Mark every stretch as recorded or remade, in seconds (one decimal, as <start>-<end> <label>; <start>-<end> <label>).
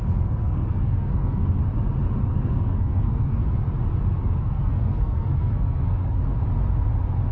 0.0-1.6 remade; 1.6-2.2 recorded; 2.2-3.4 remade; 3.4-4.4 recorded; 4.4-6.4 remade; 6.4-7.3 recorded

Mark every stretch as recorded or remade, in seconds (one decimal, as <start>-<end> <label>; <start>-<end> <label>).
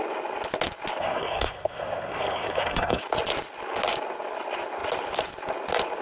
0.0-1.0 recorded; 1.0-3.0 remade; 3.0-6.0 recorded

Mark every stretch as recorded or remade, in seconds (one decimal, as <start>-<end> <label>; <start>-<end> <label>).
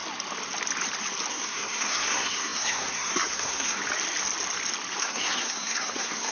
0.0-1.3 recorded; 1.3-3.8 remade; 3.8-5.0 recorded; 5.0-6.3 remade